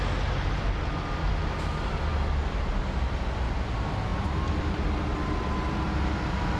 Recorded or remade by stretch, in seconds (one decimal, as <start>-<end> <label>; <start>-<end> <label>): 0.0-6.6 recorded